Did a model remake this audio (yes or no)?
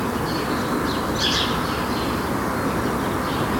no